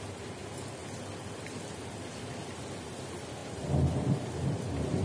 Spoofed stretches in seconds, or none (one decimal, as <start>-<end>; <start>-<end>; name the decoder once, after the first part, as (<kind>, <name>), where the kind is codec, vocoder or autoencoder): none

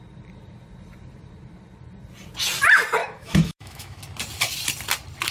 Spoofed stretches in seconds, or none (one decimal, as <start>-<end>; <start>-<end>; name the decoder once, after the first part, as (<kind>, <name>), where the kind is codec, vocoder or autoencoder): 3.0-4.0 (autoencoder, DAC-VAE)

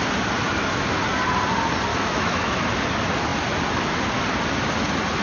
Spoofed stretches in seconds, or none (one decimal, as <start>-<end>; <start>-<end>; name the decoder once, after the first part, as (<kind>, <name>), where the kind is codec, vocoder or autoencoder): 1.9-2.6 (autoencoder, DAC-VAE)